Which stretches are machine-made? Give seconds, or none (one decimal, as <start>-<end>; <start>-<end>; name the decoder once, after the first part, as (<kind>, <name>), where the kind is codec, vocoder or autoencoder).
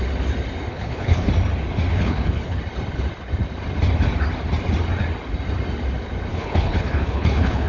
0.7-1.3 (codec, HILCodec); 1.9-2.6; 6.3-7.7